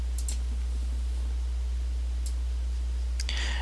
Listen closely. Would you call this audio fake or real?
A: real